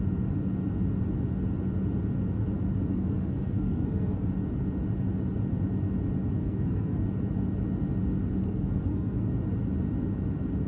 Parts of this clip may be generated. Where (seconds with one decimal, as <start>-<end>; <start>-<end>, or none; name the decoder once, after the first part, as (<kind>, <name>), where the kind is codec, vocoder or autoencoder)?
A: 2.9-4.3 (codec, SNAC); 6.4-7.0; 8.4-9.3